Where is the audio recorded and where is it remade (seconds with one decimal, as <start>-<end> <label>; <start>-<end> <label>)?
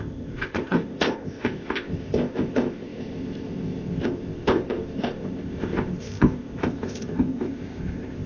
0.0-8.3 remade